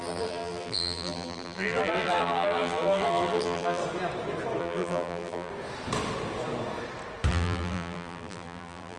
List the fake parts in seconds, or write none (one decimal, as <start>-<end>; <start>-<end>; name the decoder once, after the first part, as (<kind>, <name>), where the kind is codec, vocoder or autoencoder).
0.0-3.8 (vocoder, BigVGAN v2); 4.6-5.5; 7.3-9.0